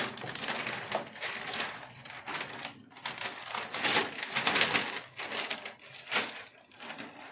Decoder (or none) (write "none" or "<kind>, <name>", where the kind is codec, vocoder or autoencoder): none